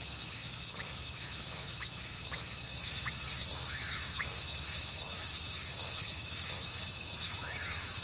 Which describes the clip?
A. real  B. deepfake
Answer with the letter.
B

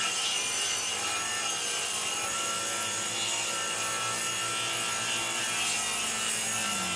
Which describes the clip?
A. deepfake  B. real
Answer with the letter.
B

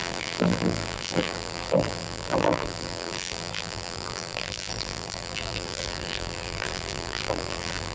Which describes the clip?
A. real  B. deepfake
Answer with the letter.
B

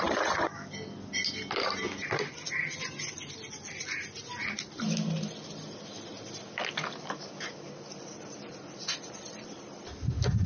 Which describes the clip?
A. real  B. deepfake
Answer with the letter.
A